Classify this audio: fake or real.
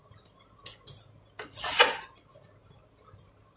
real